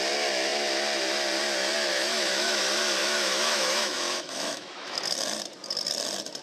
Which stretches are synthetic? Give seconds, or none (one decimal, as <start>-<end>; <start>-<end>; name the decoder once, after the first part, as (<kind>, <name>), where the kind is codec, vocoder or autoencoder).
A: 1.9-2.6 (autoencoder, DAC-VAE); 3.0-5.0